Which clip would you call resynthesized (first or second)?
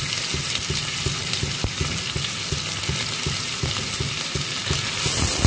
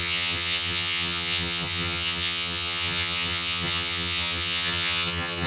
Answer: second